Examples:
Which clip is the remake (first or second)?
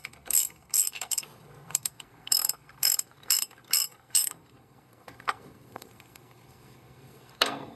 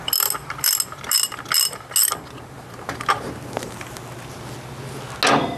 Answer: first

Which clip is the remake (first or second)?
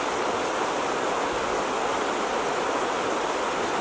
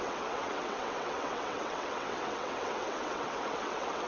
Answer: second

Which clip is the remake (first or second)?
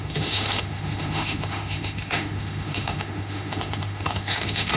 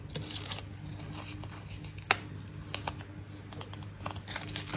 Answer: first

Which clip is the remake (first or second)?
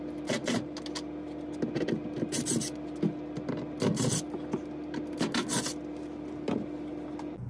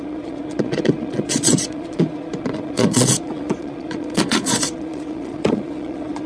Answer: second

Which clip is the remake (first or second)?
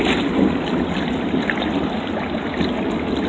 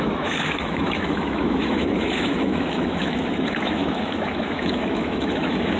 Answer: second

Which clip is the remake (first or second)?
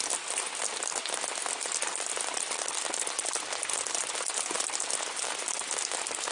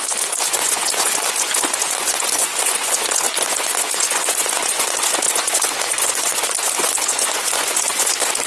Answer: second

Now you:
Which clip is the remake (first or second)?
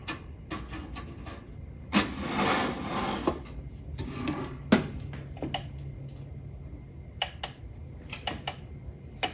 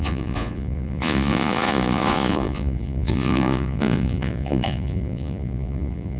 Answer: second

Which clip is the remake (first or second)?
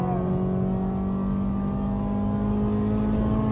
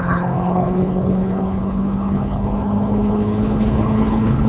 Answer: second